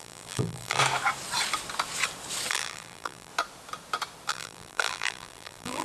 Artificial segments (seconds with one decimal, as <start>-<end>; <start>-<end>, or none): 0.0-0.8; 2.5-3.3; 4.3-5.8